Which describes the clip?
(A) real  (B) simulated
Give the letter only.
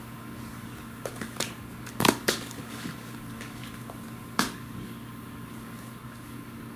B